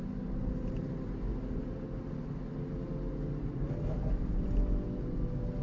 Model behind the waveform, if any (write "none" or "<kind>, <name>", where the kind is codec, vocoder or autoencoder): none